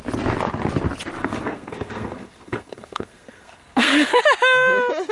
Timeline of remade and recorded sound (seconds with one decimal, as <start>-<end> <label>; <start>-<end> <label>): 0.0-1.2 recorded; 1.2-4.2 remade; 4.2-5.1 recorded